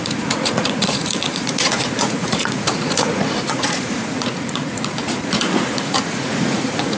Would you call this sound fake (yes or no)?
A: yes